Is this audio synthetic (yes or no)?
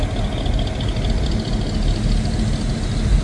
no